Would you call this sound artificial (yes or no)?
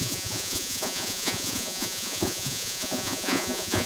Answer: yes